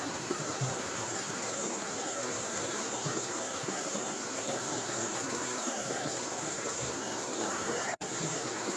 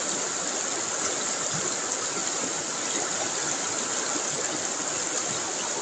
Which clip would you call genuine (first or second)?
second